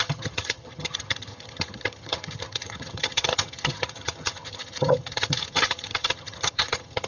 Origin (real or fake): fake